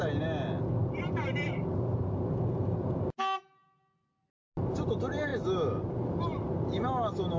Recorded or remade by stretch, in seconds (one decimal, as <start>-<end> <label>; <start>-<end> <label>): 0.0-7.4 recorded